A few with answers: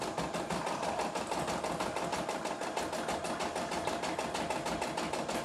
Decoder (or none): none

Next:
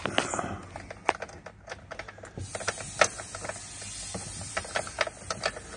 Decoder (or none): none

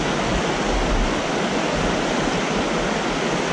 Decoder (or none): none